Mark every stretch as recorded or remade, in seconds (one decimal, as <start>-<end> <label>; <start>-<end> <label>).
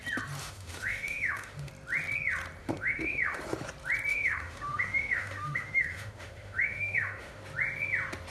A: 0.0-0.4 recorded; 0.4-1.7 remade; 1.7-2.6 recorded; 2.6-3.4 remade; 3.4-4.1 recorded; 4.1-7.4 remade; 7.4-8.3 recorded